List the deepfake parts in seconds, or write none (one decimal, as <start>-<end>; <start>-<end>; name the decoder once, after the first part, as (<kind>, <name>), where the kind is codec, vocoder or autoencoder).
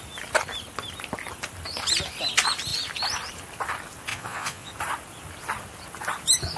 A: 4.1-4.7 (vocoder, Vocos)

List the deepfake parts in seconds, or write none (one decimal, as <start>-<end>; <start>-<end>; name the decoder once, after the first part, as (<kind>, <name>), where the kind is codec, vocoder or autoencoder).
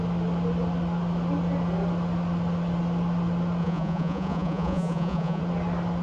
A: 3.6-5.4 (vocoder, Vocos)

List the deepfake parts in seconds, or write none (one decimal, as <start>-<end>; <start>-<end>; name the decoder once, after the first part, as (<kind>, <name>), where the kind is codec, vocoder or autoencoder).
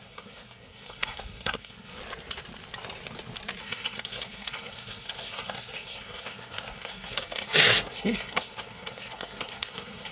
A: 0.0-2.0 (codec, SNAC); 3.6-10.1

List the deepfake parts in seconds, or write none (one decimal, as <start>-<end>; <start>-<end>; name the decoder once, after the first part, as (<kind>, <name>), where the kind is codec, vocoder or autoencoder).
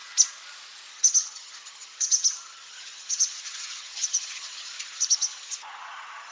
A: 0.9-6.3 (vocoder, HiFi-GAN)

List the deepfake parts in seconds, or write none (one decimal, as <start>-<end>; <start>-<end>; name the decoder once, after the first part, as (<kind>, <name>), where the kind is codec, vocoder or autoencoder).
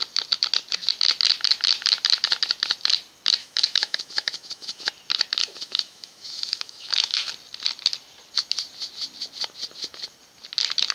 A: 3.4-4.9 (autoencoder, DAC-VAE); 5.4-7.3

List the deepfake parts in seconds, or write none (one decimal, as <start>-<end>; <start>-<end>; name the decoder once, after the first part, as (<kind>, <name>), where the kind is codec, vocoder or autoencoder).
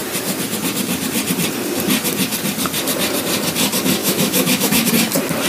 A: 4.0-4.9 (autoencoder, DAC-VAE)